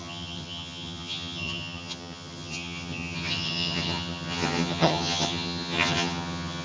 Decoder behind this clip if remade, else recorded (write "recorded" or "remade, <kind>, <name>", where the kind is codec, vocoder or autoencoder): remade, vocoder, HiFi-GAN